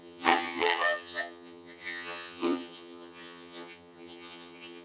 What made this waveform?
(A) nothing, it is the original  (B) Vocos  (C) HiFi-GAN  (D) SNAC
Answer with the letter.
C